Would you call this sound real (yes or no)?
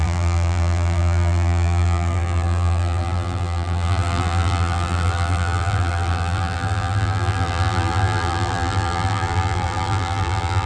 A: no